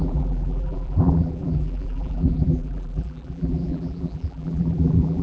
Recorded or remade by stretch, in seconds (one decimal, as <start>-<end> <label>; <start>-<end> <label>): 0.0-5.2 remade